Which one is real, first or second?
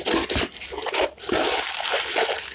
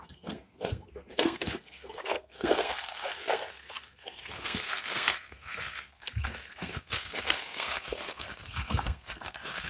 first